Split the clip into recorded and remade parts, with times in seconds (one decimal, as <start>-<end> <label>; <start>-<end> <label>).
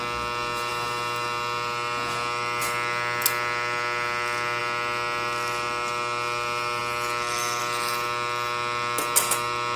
0.0-9.8 recorded